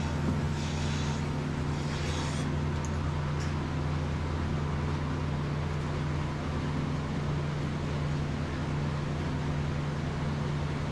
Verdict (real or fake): real